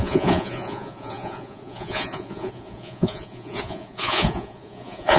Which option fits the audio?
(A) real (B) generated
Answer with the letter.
B